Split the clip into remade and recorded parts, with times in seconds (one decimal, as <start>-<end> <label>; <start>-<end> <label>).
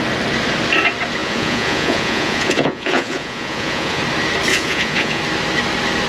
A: 0.0-1.2 recorded; 1.2-4.0 remade; 4.0-4.5 recorded; 4.5-5.2 remade; 5.2-6.1 recorded